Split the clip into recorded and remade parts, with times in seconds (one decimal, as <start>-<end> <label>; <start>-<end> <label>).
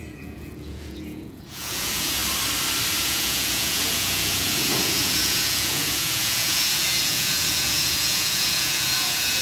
0.0-2.2 remade; 2.2-3.0 recorded; 3.0-9.4 remade